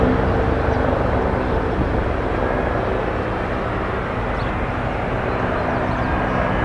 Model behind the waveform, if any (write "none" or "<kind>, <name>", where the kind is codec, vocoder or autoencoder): none